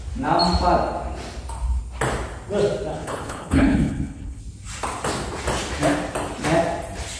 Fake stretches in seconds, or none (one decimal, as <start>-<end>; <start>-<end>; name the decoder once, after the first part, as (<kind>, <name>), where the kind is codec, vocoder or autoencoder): 2.9-4.4 (codec, HILCodec)